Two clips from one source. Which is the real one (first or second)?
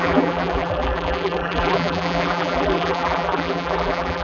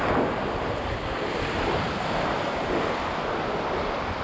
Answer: second